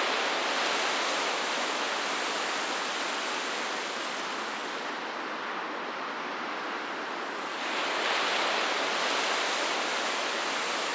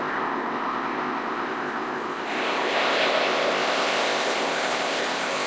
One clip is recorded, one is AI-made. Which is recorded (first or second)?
first